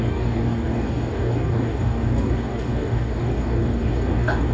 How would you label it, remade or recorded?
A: remade